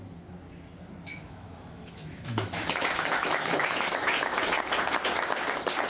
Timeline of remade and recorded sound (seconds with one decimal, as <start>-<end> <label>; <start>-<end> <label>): 0.0-1.1 recorded; 1.1-4.6 remade; 4.6-5.9 recorded